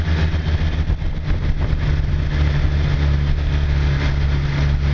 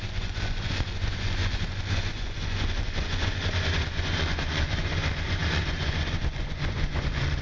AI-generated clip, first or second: second